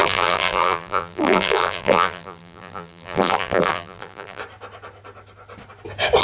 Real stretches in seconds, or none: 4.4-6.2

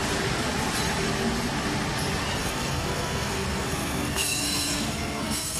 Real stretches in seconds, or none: 0.0-2.4

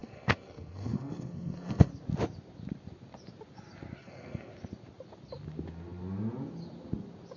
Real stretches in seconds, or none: 1.9-4.0; 4.5-7.4

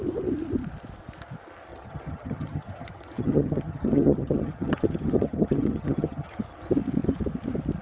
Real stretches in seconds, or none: 0.0-1.7; 6.4-7.8

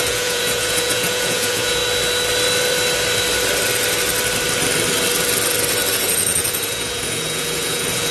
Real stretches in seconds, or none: 1.8-5.9

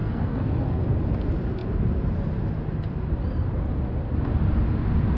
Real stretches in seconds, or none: 0.8-5.2

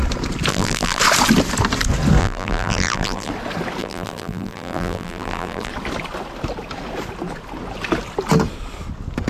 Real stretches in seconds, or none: 0.0-0.5; 1.0-2.2; 3.3-3.8; 5.7-9.3

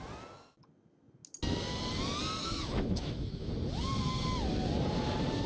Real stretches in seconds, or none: 0.0-2.4; 3.5-5.5